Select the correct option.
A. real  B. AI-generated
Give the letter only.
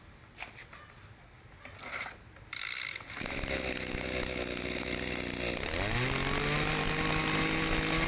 A